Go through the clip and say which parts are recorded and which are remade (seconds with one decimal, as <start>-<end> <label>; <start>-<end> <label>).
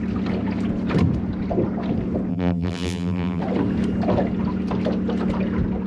0.0-2.3 recorded; 2.3-3.4 remade; 3.4-5.9 recorded